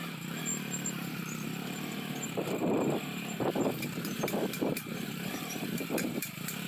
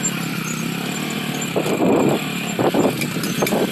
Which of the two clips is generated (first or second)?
first